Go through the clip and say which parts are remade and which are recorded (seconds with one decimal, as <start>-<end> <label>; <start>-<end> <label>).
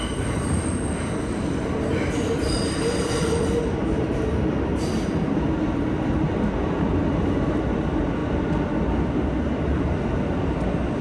0.0-11.0 recorded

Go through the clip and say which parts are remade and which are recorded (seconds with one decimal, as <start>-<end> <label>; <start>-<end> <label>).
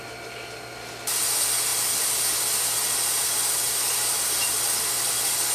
0.0-5.5 recorded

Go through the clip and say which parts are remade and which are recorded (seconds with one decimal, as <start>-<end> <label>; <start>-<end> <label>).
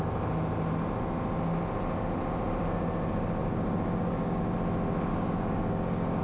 0.0-3.4 recorded; 3.4-4.4 remade; 4.4-5.1 recorded; 5.1-6.2 remade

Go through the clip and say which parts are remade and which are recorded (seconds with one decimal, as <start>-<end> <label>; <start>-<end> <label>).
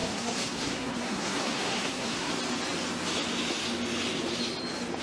0.0-2.3 remade; 2.3-5.0 recorded